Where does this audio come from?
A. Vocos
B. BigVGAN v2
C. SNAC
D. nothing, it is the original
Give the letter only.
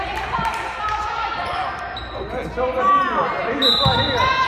D